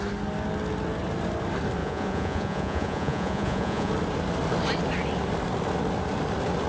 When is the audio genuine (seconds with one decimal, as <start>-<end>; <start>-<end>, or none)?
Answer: 0.0-1.8; 3.9-6.7